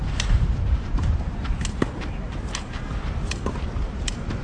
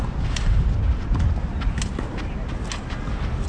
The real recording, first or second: second